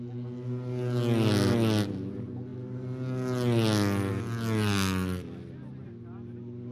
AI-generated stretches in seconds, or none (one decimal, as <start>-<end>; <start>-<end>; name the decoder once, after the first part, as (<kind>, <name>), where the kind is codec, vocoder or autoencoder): none